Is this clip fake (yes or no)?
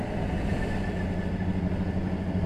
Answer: no